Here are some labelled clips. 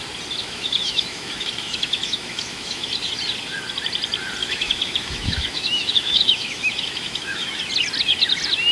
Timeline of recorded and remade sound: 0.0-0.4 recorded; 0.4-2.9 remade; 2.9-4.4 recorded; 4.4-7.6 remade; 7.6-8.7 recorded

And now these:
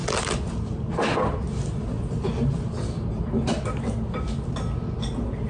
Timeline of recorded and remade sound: 0.0-5.5 recorded